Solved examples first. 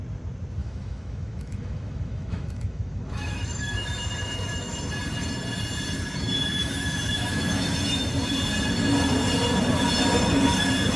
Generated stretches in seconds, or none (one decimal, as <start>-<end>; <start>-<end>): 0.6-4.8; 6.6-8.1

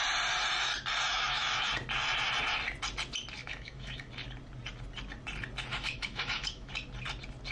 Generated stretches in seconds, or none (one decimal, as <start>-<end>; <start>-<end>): 1.1-1.7; 3.4-4.1; 5.7-6.7

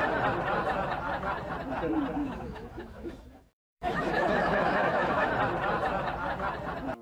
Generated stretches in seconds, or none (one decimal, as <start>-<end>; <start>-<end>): 2.2-5.3

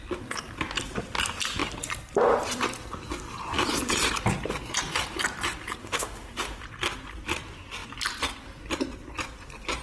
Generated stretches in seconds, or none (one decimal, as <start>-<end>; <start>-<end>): 5.8-6.6

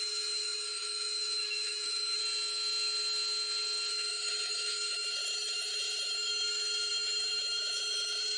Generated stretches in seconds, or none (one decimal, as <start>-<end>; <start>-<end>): 0.0-2.2; 3.9-8.4

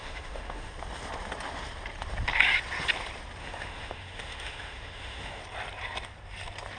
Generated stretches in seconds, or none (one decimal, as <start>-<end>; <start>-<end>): 0.0-0.7; 3.4-5.4